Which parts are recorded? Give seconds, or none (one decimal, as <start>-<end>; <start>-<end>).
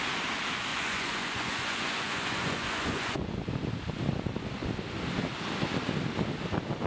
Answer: 0.0-0.7; 3.5-6.9